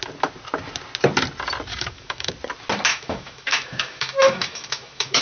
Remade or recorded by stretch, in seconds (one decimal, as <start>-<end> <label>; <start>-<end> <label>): 0.0-1.7 recorded; 1.7-2.3 remade; 2.3-2.9 recorded; 2.9-5.2 remade